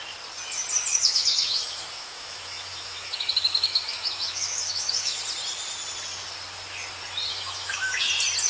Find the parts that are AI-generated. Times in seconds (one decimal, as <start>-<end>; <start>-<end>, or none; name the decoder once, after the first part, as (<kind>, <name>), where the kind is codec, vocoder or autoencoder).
0.9-5.2 (autoencoder, DAC-VAE); 7.3-8.1